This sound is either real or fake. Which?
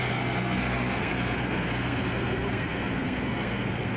fake